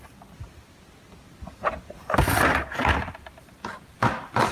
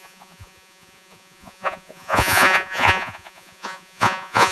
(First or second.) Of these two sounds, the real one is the first